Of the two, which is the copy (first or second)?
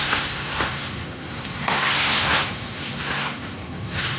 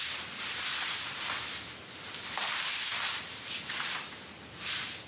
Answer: first